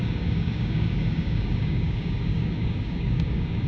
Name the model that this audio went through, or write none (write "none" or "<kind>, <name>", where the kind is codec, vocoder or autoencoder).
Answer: codec, DAC